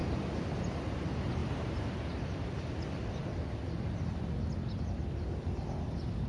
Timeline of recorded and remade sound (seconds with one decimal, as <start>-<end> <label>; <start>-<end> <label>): 0.0-6.3 recorded